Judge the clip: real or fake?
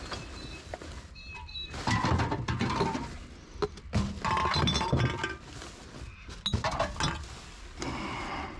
real